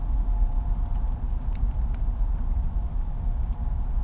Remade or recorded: recorded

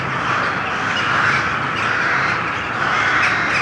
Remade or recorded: recorded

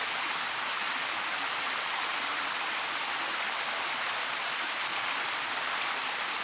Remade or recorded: recorded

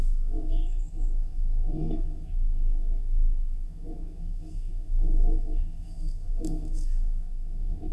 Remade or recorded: remade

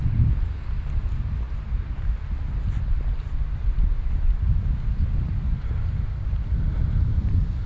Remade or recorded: recorded